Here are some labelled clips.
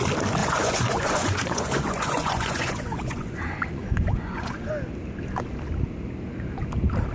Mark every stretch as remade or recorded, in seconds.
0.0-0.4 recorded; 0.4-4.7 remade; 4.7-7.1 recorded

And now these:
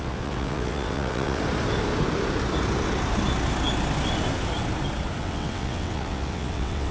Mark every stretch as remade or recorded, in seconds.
0.0-1.4 remade; 1.4-5.2 recorded; 5.2-6.9 remade

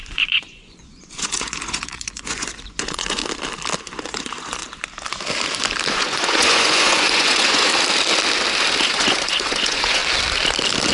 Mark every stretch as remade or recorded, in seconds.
0.0-3.2 remade; 3.2-4.0 recorded; 4.0-4.6 remade; 4.6-5.9 recorded; 5.9-7.7 remade; 7.7-8.8 recorded; 8.8-10.0 remade; 10.0-10.9 recorded

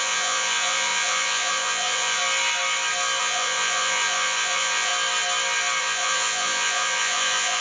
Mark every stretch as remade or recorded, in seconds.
0.0-2.2 remade; 2.2-3.2 recorded; 3.2-4.9 remade; 4.9-5.8 recorded; 5.8-7.6 remade